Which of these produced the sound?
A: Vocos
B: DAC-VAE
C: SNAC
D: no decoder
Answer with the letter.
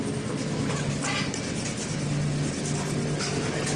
D